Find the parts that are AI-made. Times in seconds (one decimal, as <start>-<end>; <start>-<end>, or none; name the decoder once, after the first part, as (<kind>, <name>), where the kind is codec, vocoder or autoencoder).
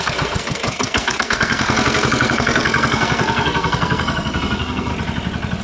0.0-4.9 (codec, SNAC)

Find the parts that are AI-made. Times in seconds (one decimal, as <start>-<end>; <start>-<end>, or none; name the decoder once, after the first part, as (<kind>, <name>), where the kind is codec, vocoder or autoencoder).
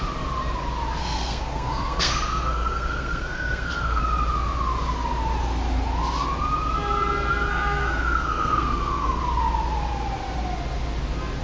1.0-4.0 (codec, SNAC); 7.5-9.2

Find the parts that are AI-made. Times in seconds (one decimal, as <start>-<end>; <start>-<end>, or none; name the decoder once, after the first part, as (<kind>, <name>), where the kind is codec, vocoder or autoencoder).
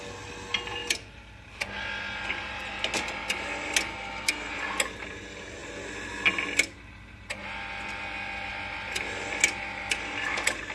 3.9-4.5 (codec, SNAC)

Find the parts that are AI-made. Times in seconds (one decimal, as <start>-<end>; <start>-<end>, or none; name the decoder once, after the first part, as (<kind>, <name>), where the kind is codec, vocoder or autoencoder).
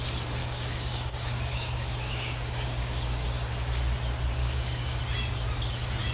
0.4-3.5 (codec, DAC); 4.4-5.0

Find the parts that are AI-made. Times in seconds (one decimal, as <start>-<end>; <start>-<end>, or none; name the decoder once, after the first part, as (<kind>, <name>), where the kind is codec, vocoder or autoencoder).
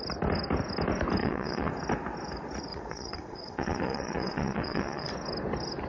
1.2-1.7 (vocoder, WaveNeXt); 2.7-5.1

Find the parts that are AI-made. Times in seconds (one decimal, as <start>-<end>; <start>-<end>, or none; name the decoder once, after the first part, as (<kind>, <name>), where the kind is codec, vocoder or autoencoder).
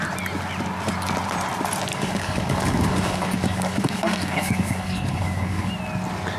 1.9-5.7 (codec, DAC)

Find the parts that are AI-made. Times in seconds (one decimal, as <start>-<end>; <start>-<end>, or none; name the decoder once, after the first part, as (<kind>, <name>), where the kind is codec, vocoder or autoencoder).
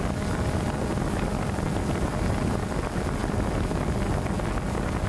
none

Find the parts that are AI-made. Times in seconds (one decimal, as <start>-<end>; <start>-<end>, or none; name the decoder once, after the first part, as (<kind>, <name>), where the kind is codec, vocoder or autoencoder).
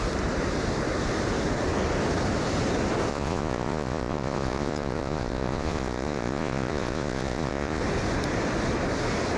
3.1-7.8 (vocoder, Vocos)